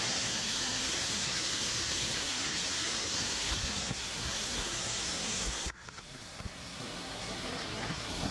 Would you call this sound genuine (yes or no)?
no